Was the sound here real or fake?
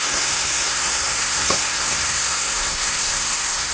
fake